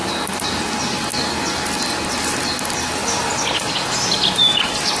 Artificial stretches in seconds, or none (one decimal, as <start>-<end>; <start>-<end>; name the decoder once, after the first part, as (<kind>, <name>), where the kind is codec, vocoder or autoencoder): none